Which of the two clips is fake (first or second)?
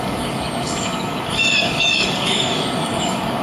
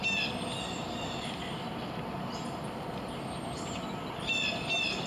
first